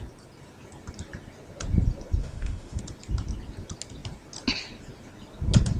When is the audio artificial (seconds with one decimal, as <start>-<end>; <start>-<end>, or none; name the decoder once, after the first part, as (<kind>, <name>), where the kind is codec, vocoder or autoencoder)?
2.2-2.8 (autoencoder, DAC-VAE)